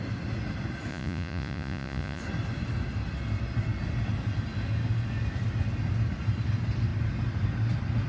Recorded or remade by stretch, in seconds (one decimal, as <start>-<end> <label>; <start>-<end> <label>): 0.0-0.9 recorded; 0.9-2.2 remade; 2.2-8.1 recorded